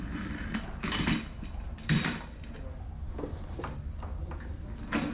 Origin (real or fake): real